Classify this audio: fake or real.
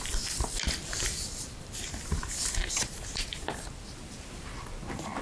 real